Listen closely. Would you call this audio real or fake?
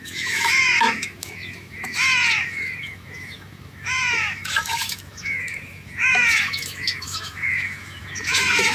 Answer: fake